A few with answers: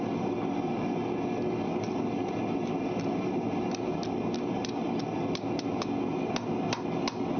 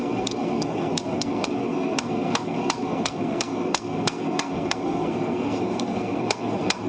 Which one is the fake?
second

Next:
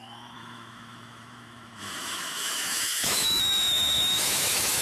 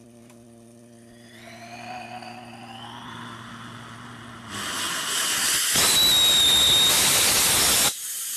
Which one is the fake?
first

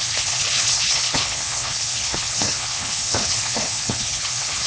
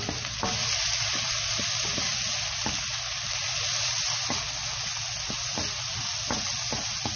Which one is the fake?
first